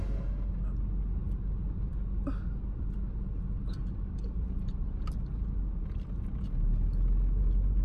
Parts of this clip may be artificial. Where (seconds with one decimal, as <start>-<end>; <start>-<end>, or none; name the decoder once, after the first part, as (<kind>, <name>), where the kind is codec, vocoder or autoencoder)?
none